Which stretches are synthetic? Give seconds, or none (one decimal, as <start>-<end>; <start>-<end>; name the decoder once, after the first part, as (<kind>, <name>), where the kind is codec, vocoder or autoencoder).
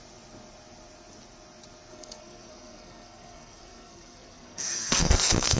1.9-5.6 (codec, SNAC)